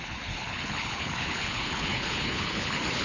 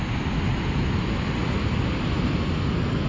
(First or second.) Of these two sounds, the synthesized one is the first